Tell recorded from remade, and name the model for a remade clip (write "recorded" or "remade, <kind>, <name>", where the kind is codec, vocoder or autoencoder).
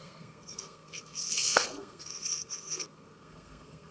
remade, codec, SNAC